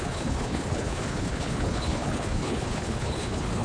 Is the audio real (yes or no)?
no